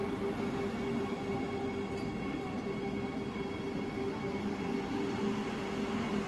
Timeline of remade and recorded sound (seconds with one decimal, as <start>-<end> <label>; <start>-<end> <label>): 0.0-6.3 recorded